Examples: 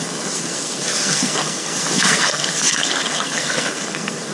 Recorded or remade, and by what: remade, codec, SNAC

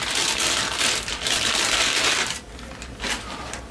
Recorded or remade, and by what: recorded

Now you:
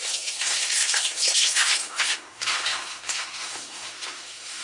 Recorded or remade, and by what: remade, codec, SNAC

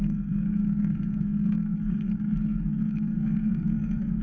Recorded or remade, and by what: remade, codec, SNAC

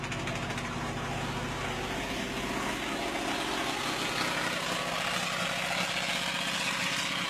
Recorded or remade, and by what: recorded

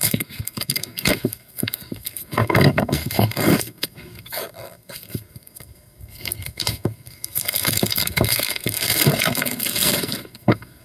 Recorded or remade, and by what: remade, codec, SNAC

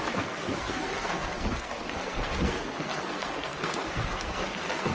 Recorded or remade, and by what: remade, codec, SNAC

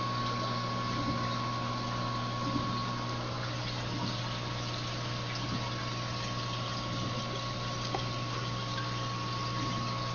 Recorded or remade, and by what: recorded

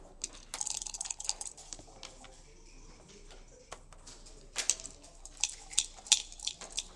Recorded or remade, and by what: recorded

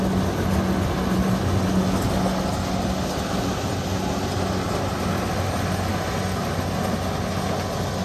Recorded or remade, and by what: recorded